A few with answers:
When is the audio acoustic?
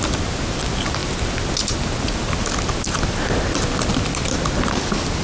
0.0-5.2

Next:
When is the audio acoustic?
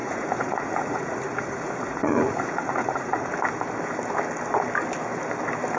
3.3-5.8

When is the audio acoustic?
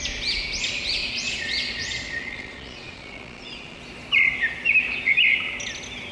0.0-1.0; 3.8-6.1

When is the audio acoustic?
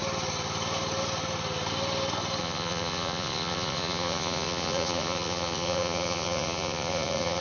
0.0-2.4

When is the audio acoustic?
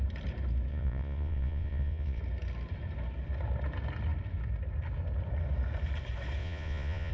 0.0-0.7; 2.2-6.4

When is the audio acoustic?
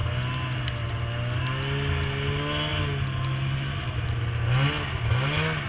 0.0-5.7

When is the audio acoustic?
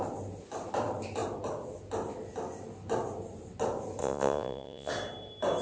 0.0-4.0; 4.9-5.6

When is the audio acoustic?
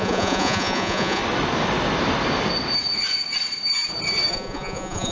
1.2-4.3